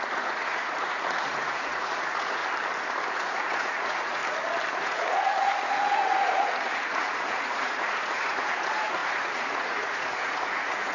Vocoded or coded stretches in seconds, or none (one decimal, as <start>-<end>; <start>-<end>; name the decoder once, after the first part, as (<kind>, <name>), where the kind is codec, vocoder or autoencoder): 0.0-2.4 (vocoder, Vocos); 3.1-4.2; 4.7-10.9